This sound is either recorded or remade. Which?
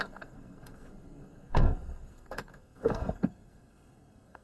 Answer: remade